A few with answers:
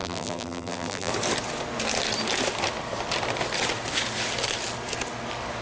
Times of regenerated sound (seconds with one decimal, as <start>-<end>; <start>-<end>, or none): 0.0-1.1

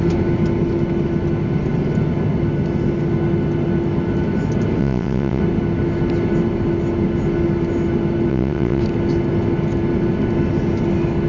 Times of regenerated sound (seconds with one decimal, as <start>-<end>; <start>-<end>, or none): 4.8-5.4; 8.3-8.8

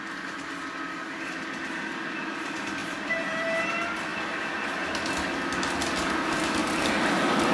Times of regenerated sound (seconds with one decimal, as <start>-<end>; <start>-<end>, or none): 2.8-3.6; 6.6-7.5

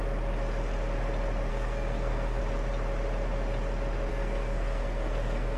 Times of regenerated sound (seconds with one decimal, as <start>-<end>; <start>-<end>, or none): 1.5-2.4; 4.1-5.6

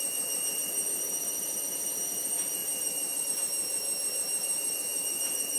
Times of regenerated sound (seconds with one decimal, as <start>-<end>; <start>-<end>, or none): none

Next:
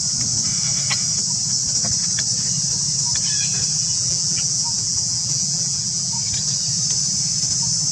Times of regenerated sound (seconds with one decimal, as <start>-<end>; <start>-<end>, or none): 3.8-6.1

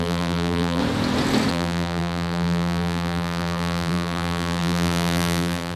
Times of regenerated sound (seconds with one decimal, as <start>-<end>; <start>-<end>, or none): 0.0-0.8; 1.5-5.8

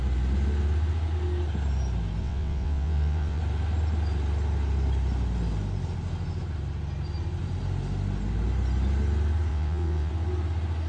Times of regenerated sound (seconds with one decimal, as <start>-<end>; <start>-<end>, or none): 2.2-3.4; 9.5-10.1